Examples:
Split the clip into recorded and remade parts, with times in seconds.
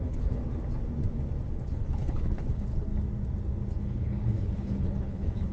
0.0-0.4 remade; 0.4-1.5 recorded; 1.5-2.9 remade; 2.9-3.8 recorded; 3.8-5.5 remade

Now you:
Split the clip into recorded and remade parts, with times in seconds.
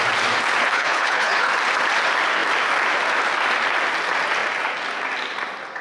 0.0-0.6 recorded; 0.6-1.5 remade; 1.5-5.8 recorded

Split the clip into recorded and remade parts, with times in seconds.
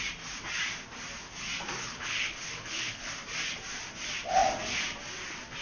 0.0-1.8 recorded; 1.8-3.1 remade; 3.1-5.6 recorded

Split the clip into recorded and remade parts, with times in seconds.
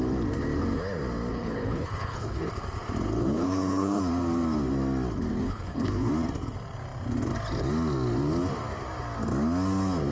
0.0-1.3 recorded; 1.3-2.5 remade; 2.5-3.2 recorded; 3.2-4.0 remade; 4.0-5.3 recorded; 5.3-6.1 remade; 6.1-10.1 recorded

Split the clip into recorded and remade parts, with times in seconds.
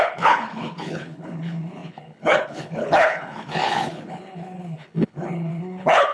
0.0-6.1 remade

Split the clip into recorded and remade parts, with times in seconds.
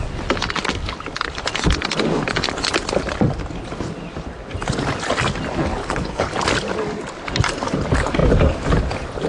0.0-5.8 recorded; 5.8-6.3 remade; 6.3-9.3 recorded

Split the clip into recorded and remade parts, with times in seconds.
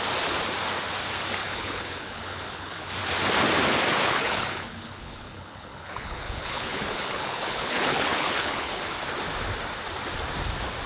0.0-1.4 recorded; 1.4-2.9 remade; 2.9-4.0 recorded; 4.0-8.8 remade; 8.8-10.9 recorded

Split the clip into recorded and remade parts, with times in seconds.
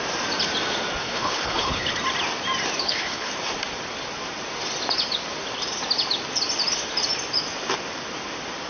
0.0-1.0 recorded; 1.0-1.9 remade; 1.9-2.8 recorded; 2.8-3.3 remade; 3.3-8.7 recorded